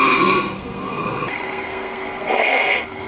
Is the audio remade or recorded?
remade